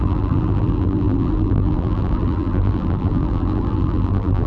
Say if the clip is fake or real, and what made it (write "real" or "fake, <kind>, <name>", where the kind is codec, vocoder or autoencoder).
fake, vocoder, BigVGAN v2